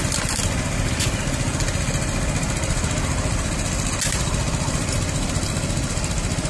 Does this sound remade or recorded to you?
recorded